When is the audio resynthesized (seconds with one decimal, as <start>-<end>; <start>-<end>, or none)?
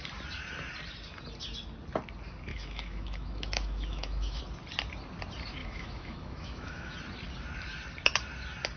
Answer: 2.5-4.4; 5.6-7.0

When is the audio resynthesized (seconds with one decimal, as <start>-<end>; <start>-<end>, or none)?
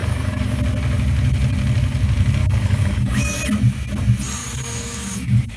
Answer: 0.0-0.6; 2.4-3.4; 4.4-5.6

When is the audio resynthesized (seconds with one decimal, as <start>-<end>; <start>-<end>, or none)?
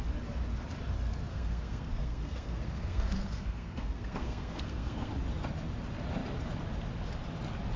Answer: 1.3-5.1